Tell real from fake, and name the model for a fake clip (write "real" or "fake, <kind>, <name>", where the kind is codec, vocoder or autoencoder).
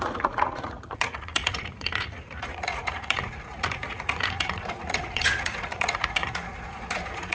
fake, vocoder, Vocos